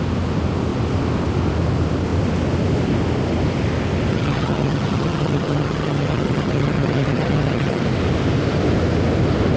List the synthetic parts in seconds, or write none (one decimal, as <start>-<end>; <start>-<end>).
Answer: 4.1-7.8